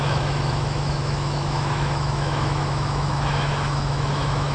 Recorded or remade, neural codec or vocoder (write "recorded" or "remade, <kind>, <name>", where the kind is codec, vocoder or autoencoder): remade, autoencoder, DAC-VAE